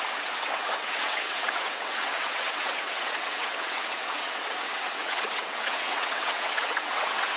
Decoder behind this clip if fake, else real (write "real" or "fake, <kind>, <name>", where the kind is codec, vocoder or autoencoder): fake, vocoder, WaveNeXt